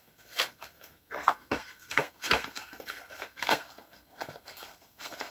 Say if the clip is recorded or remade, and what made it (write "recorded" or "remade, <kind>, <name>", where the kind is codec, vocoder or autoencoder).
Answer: remade, codec, SNAC